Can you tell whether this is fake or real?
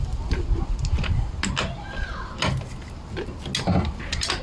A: real